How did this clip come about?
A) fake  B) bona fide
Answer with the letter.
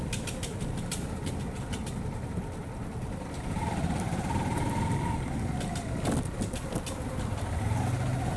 B